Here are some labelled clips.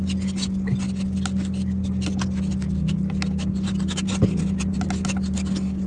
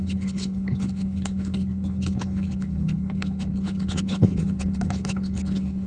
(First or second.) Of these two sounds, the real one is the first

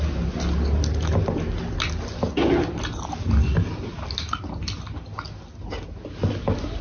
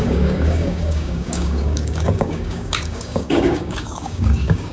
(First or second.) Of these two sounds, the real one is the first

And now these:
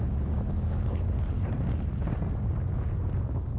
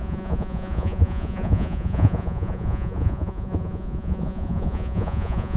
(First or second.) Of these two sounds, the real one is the first